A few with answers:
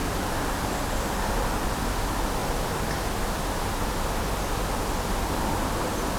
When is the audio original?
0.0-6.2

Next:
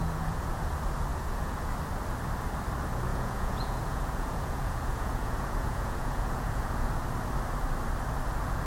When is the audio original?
0.7-1.1; 1.7-3.1; 6.9-8.7